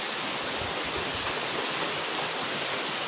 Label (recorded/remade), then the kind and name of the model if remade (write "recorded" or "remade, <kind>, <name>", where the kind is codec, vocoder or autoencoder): recorded